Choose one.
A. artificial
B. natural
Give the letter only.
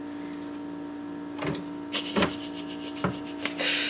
B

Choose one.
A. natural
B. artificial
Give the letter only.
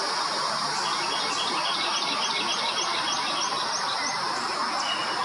A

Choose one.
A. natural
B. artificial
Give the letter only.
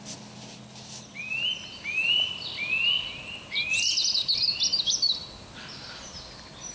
A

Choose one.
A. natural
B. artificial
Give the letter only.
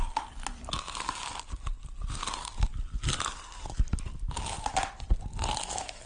A